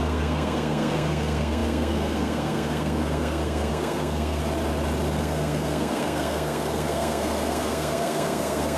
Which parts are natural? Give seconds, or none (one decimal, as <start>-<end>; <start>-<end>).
4.4-5.2